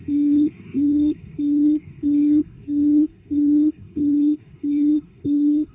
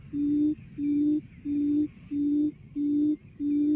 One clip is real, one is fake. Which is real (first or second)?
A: second